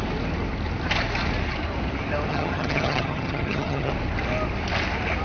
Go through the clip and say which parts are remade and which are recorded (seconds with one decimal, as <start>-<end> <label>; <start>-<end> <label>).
0.0-2.3 recorded; 2.3-3.9 remade; 3.9-5.2 recorded